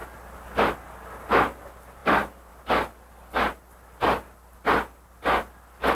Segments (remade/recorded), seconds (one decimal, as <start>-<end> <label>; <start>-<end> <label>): 0.0-0.6 remade; 0.6-2.0 recorded; 2.0-2.5 remade; 2.5-2.9 recorded; 2.9-5.9 remade